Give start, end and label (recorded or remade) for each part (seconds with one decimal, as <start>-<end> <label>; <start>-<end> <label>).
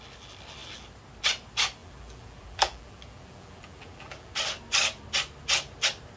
0.0-1.8 recorded; 1.8-4.3 remade; 4.3-6.2 recorded